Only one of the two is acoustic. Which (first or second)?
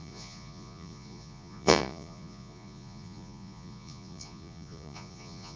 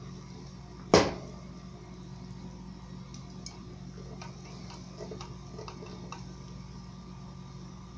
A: second